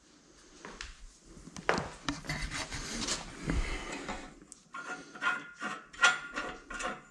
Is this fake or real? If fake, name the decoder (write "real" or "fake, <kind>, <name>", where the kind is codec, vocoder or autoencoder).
real